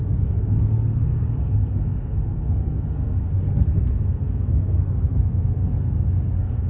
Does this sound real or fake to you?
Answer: fake